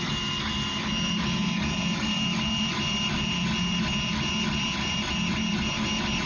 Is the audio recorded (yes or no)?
yes